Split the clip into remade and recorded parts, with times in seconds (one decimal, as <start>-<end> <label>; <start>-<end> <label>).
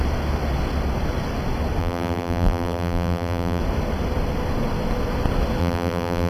0.0-1.8 recorded; 1.8-3.6 remade; 3.6-5.6 recorded; 5.6-6.3 remade